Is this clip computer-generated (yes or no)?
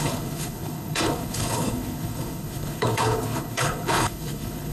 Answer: yes